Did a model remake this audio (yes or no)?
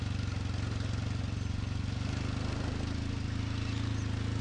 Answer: no